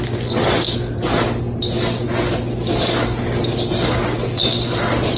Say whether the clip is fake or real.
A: real